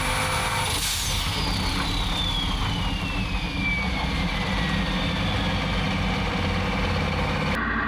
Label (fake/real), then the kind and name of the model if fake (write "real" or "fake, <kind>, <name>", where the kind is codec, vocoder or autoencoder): real